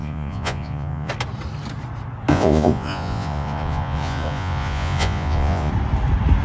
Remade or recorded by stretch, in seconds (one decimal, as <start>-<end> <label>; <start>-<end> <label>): 0.0-1.1 remade; 1.1-2.3 recorded; 2.3-5.7 remade; 5.7-6.4 recorded